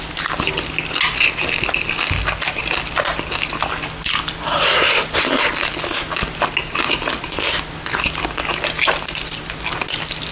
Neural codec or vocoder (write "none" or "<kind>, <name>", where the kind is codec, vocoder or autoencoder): none